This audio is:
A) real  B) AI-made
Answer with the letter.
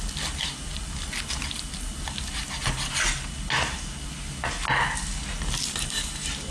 A